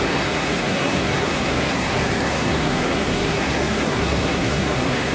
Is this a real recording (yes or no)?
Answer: no